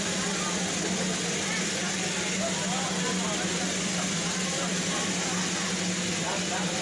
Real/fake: real